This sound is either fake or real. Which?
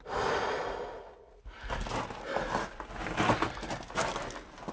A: real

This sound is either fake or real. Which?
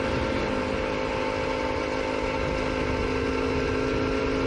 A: real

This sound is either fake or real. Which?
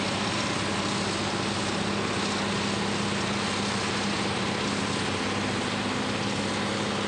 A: real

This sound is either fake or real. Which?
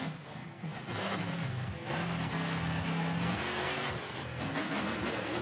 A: fake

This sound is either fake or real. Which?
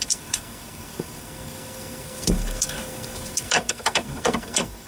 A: fake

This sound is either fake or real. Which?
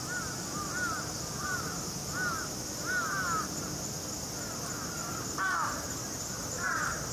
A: real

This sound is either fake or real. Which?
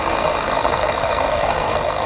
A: fake